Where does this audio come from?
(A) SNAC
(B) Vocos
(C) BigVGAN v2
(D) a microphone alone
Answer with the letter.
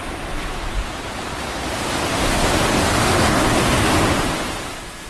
D